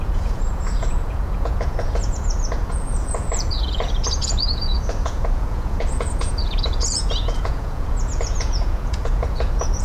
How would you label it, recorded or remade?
remade